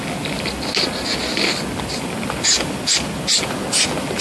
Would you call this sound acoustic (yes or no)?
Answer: yes